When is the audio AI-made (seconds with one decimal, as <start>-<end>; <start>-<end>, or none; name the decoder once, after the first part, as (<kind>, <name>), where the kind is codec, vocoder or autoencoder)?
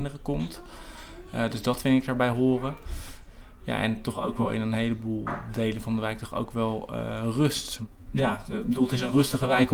4.1-4.5 (vocoder, Vocos); 7.8-9.7